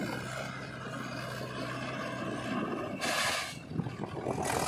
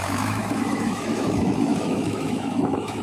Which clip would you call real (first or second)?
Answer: first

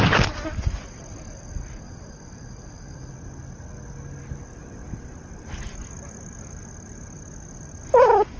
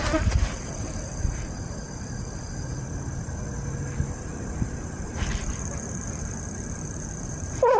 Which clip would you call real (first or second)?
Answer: first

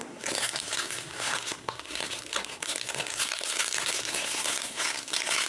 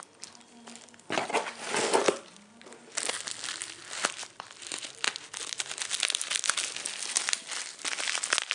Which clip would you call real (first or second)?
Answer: second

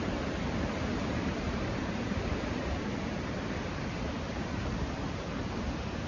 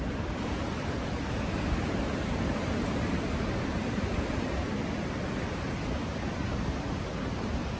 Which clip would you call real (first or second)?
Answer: second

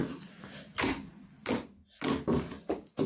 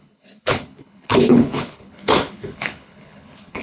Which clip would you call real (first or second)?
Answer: first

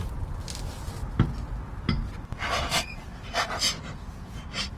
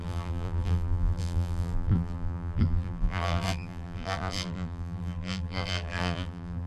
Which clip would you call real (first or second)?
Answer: first